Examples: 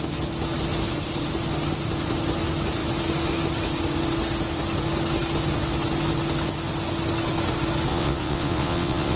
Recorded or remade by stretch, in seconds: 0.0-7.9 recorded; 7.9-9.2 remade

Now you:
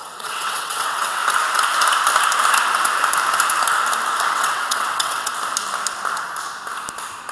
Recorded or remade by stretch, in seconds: 0.0-1.2 remade; 1.2-4.3 recorded; 4.3-5.3 remade; 5.3-7.3 recorded

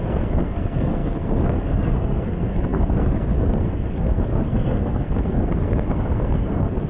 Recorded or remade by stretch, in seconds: 0.0-6.9 remade